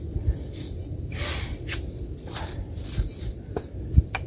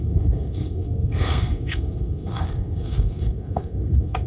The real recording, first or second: first